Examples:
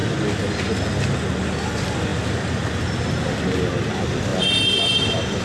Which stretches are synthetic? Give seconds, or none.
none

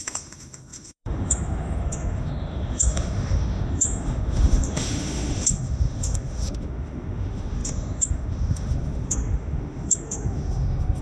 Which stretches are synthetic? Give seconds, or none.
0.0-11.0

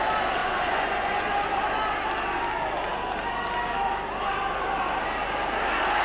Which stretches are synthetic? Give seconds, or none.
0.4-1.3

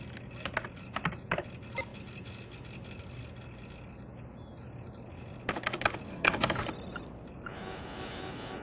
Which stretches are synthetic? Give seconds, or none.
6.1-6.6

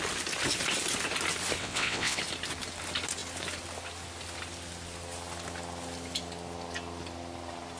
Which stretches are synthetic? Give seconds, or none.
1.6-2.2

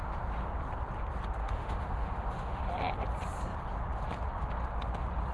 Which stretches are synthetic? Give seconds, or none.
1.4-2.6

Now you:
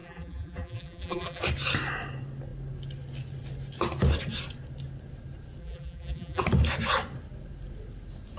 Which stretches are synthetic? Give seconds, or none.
0.0-1.4; 5.6-6.4